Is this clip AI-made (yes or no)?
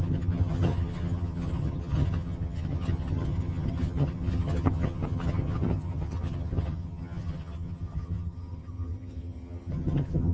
yes